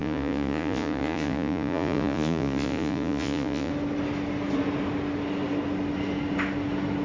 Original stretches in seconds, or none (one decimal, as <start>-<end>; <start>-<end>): 3.7-7.0